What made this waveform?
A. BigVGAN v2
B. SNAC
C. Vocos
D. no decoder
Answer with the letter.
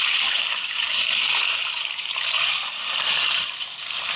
A